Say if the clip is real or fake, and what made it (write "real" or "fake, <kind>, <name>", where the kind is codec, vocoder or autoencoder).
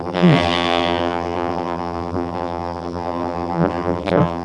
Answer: fake, vocoder, BigVGAN v2